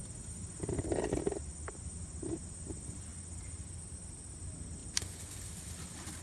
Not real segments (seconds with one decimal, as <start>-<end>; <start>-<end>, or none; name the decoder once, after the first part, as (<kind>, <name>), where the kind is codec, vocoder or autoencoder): none